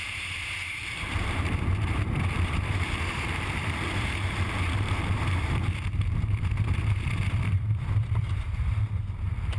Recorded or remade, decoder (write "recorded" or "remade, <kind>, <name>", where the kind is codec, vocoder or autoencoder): remade, vocoder, BigVGAN v2